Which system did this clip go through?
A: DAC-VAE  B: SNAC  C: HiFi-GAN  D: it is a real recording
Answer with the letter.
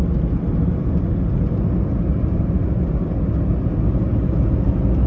D